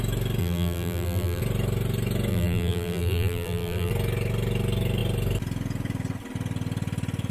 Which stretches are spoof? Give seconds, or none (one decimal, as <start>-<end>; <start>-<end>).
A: 0.4-1.4; 2.3-3.9